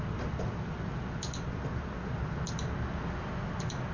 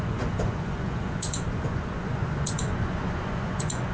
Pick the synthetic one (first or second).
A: second